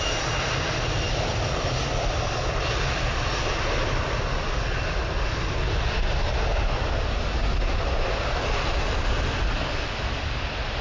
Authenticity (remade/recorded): recorded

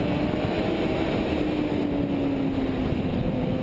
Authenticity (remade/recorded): recorded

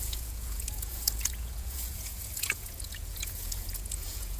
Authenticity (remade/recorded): remade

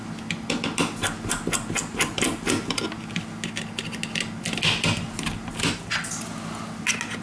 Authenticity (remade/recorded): recorded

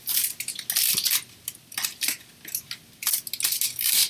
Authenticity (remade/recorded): recorded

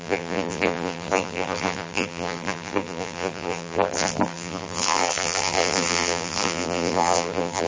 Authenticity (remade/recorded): remade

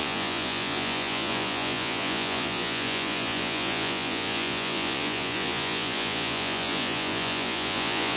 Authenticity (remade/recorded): remade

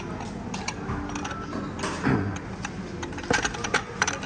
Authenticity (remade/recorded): recorded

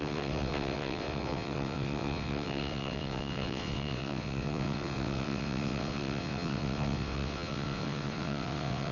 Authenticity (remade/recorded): remade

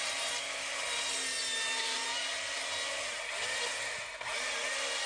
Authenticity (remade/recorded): recorded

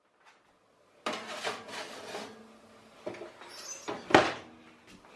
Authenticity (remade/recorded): recorded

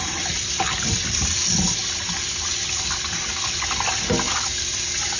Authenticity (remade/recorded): recorded